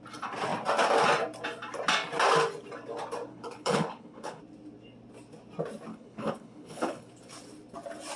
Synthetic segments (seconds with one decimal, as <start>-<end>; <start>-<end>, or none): 3.3-4.4; 5.9-7.1